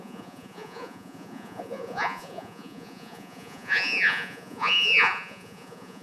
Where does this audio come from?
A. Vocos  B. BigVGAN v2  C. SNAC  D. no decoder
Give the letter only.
A